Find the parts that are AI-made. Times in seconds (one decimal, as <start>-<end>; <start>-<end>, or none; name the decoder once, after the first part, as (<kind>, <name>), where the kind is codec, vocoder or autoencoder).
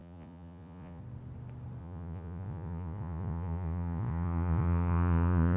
0.0-1.0 (vocoder, Vocos); 1.8-5.6